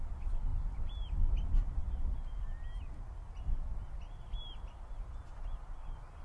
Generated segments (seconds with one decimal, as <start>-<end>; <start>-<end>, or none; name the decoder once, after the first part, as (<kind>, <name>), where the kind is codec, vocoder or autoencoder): none